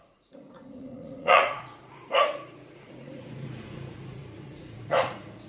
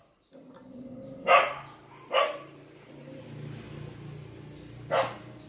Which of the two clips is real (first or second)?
second